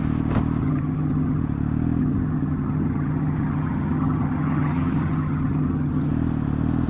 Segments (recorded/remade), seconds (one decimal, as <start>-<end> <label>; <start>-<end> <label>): 0.0-0.6 recorded; 0.6-1.4 remade; 1.4-2.0 recorded; 2.0-6.1 remade; 6.1-6.9 recorded